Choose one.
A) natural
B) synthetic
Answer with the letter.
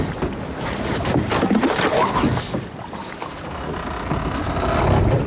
A